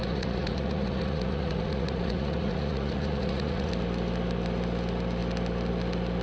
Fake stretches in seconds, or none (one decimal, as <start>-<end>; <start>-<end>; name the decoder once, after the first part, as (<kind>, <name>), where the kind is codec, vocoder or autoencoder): 0.0-3.7 (vocoder, Vocos)